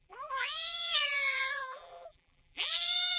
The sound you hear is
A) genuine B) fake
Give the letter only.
B